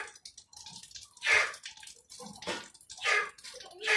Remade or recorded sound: recorded